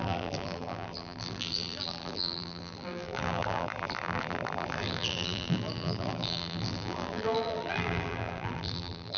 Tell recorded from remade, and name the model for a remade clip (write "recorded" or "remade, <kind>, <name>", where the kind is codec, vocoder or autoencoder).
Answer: remade, vocoder, BigVGAN v2